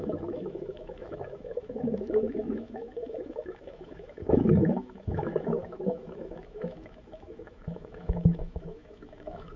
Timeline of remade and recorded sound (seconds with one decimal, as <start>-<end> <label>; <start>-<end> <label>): 0.0-9.6 remade